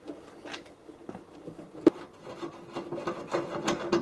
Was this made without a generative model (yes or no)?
yes